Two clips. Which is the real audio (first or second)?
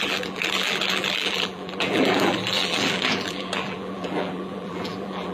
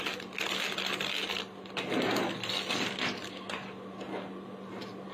second